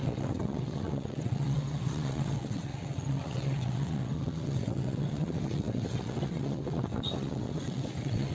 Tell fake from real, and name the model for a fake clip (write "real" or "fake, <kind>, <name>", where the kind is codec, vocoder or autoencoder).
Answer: fake, vocoder, WaveNeXt